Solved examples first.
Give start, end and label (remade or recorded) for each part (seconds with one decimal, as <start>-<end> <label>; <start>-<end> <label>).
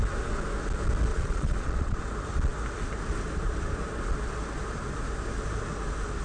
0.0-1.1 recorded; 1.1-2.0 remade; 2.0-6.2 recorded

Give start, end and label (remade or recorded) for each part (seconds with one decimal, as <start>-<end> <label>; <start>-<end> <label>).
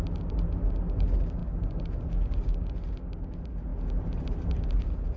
0.0-5.2 recorded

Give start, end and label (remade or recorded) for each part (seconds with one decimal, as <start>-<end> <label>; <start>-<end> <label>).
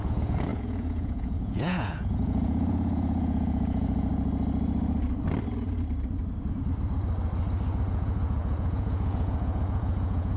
0.0-4.1 remade; 4.1-7.8 recorded; 7.8-10.4 remade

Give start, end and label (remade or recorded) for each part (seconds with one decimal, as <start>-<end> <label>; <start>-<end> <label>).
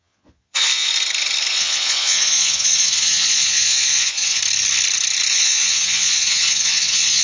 0.0-0.9 remade; 0.9-1.5 recorded; 1.5-4.4 remade; 4.4-5.3 recorded; 5.3-7.2 remade